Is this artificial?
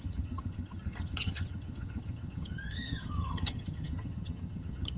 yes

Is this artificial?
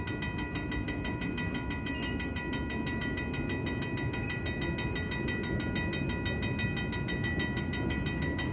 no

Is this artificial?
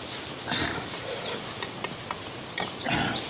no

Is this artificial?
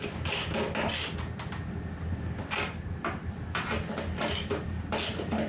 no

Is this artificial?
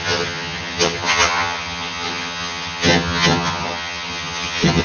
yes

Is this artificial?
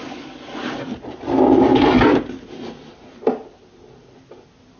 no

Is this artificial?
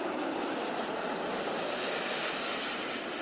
no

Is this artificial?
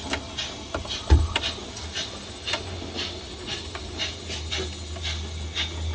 no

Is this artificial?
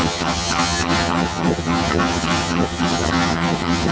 yes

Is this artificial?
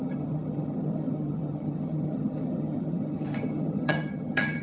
yes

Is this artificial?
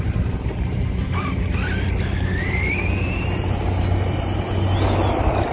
no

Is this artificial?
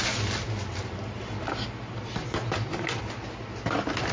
no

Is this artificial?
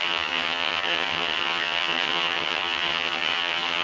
yes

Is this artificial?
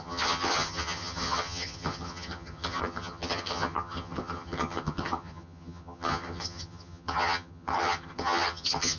yes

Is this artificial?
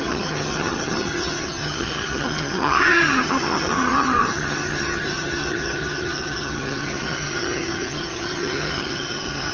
yes